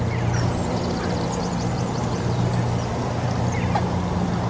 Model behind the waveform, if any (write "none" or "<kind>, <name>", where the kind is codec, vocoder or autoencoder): none